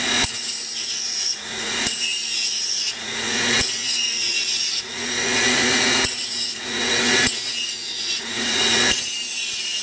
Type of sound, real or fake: fake